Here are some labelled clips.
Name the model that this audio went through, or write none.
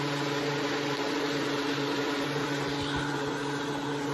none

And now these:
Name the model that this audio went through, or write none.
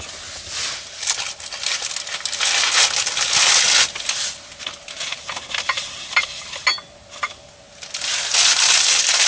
none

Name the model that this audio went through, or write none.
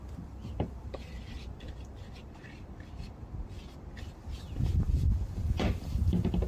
vocoder, BigVGAN v2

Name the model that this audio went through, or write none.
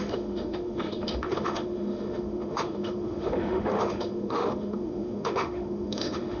autoencoder, DAC-VAE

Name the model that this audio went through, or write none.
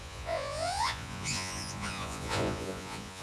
vocoder, Vocos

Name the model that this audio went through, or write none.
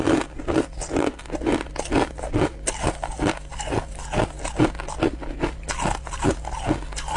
none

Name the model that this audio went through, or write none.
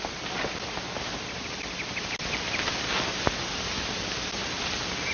none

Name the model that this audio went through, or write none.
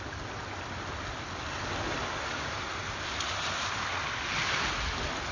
none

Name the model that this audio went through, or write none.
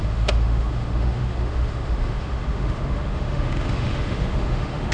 autoencoder, DAC-VAE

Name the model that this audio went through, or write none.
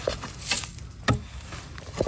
none